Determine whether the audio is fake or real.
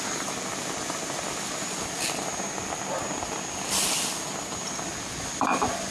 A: real